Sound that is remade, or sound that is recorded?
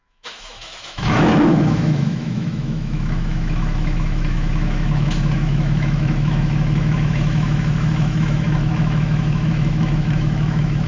remade